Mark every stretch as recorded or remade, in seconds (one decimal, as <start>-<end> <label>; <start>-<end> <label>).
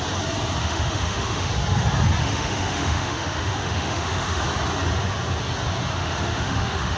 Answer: 0.0-0.6 recorded; 0.6-1.5 remade; 1.5-2.2 recorded; 2.2-4.4 remade; 4.4-6.0 recorded; 6.0-7.0 remade